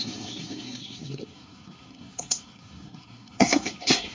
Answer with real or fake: fake